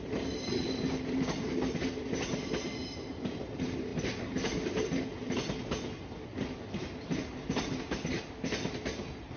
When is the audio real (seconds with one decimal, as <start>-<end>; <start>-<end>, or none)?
0.0-9.4